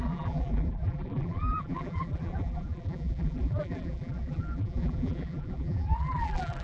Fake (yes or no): yes